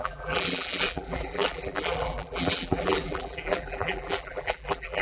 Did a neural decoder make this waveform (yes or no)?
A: yes